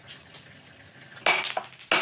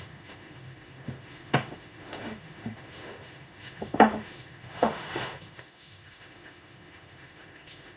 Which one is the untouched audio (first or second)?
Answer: first